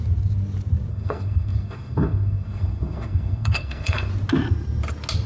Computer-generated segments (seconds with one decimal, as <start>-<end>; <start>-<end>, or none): 0.9-4.1